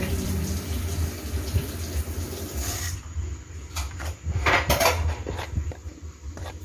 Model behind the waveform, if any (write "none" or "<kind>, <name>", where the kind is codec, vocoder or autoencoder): vocoder, BigVGAN v2